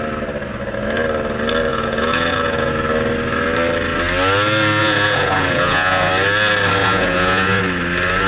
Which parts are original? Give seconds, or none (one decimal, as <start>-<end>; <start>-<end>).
0.0-1.7; 2.7-4.8; 6.1-6.8; 7.6-8.3